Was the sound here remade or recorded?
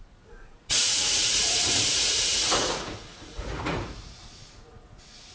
remade